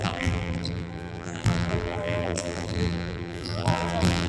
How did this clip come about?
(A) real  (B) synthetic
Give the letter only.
B